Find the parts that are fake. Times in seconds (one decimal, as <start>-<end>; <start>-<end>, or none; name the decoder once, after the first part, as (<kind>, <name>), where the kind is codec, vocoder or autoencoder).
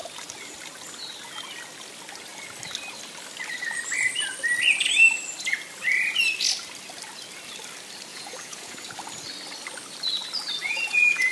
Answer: 8.1-8.9 (vocoder, Vocos); 10.6-11.3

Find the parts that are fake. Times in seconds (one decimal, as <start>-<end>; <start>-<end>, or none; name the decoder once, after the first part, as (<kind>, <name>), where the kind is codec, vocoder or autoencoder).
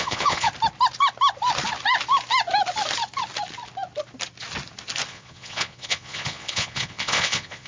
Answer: 0.0-0.5 (vocoder, Vocos); 5.1-7.7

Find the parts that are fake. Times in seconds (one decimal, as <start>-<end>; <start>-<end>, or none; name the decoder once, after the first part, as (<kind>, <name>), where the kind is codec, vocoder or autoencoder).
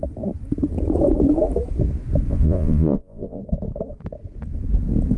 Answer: 2.3-3.4 (vocoder, Vocos)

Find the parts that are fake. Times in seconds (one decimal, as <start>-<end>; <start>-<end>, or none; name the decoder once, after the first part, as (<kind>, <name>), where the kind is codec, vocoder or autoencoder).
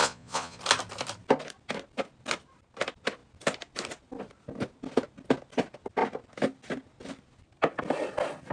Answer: 0.0-0.6 (vocoder, Vocos)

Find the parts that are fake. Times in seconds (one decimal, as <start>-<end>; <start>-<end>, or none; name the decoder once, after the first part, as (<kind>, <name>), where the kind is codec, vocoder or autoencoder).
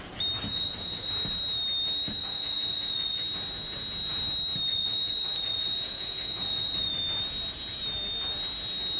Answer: 0.5-1.1 (vocoder, Vocos); 2.2-3.2; 4.7-7.0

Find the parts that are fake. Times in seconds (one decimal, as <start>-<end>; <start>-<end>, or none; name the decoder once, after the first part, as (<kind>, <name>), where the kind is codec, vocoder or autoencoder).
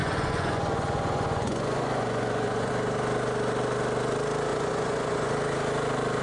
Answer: 0.0-2.7 (vocoder, Vocos); 4.5-5.3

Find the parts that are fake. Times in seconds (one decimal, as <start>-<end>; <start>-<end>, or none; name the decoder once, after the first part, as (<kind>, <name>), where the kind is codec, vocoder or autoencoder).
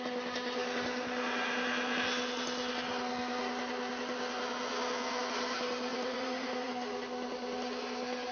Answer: 5.9-6.7 (vocoder, Vocos)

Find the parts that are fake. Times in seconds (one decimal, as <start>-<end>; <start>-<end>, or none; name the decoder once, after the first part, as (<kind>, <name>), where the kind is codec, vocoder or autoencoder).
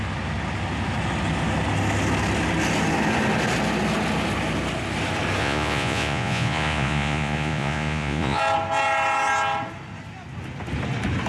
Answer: 5.4-8.4 (vocoder, Vocos)